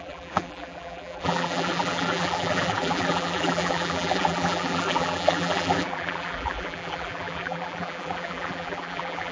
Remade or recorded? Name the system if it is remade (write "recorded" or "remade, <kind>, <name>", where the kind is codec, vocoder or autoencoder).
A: remade, vocoder, BigVGAN v2